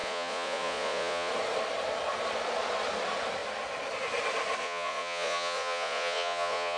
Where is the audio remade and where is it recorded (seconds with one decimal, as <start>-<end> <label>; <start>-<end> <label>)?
0.0-1.3 remade; 1.3-4.6 recorded; 4.6-6.8 remade